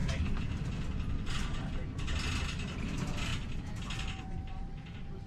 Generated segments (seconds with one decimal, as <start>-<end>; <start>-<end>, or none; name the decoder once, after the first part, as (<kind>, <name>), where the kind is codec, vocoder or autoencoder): 2.8-3.3 (vocoder, BigVGAN v2); 4.2-5.3